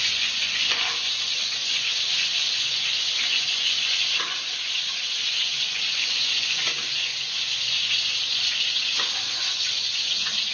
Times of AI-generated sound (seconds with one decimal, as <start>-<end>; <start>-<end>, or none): 0.0-10.5